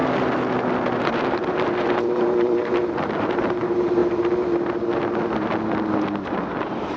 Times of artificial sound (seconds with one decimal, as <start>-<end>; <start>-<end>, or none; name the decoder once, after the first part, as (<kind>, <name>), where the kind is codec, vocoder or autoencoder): 1.0-4.0 (vocoder, BigVGAN v2); 6.6-7.0